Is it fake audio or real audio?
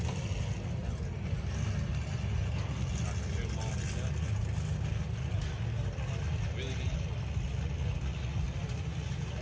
real